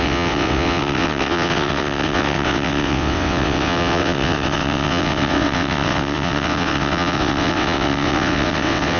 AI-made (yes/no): yes